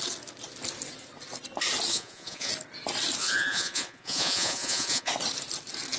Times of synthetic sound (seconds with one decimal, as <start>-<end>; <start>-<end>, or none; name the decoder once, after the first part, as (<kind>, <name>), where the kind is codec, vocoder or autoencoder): 1.9-2.5 (vocoder, Vocos); 3.2-5.1

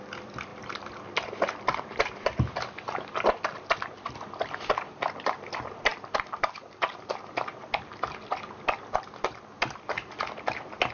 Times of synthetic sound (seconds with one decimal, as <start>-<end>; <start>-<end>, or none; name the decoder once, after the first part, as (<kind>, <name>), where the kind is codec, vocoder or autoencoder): none

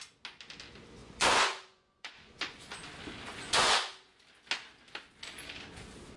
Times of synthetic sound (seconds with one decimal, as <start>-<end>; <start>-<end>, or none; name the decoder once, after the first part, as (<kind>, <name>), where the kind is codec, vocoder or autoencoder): 1.0-2.8 (vocoder, Vocos); 3.3-4.2

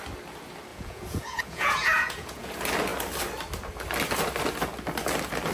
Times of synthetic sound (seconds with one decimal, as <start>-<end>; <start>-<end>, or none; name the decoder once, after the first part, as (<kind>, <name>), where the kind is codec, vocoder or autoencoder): 0.7-2.5 (vocoder, Vocos)

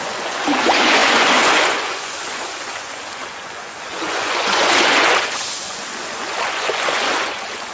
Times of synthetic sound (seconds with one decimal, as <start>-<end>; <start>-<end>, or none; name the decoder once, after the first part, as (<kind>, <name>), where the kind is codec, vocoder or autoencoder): 0.0-7.7 (vocoder, Vocos)